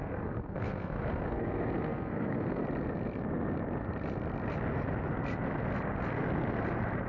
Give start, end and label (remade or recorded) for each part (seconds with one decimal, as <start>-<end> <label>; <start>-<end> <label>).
0.0-2.6 remade; 2.6-7.1 recorded